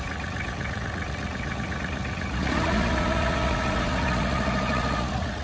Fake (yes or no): yes